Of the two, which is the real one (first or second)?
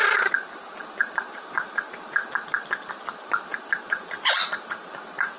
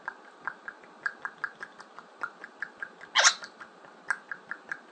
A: second